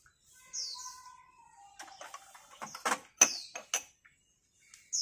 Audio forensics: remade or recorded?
recorded